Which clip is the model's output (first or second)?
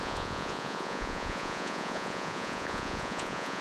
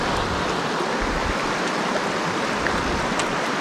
first